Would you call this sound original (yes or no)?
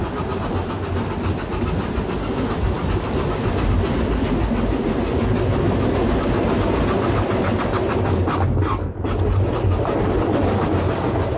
yes